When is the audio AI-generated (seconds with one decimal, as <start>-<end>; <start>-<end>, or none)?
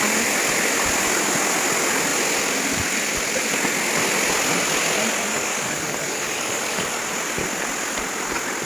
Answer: 5.3-7.0